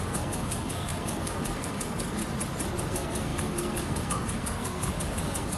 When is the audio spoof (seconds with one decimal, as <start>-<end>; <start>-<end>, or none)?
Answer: 0.0-2.2; 2.8-5.6